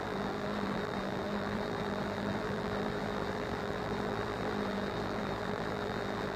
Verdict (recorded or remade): remade